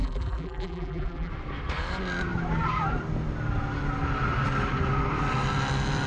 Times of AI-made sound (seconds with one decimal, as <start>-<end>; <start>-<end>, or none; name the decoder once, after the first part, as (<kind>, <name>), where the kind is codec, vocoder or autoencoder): 0.0-1.3 (vocoder, BigVGAN v2)